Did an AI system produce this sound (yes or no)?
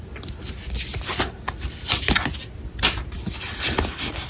no